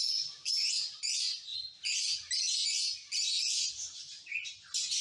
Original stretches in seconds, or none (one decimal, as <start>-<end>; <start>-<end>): 0.0-5.0